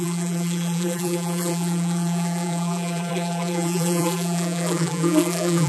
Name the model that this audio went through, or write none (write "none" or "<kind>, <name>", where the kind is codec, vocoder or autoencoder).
vocoder, BigVGAN v2